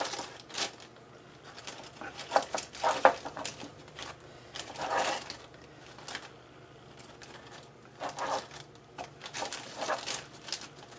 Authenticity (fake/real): real